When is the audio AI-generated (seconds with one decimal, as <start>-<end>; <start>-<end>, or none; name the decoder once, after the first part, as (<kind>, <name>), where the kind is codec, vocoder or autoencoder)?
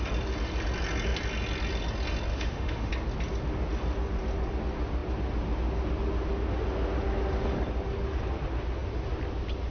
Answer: 2.3-2.9 (autoencoder, DAC-VAE)